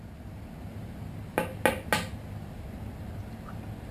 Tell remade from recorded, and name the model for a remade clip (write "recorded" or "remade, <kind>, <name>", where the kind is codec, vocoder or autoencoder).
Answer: recorded